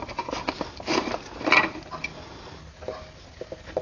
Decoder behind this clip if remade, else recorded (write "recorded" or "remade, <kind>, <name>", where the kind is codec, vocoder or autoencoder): recorded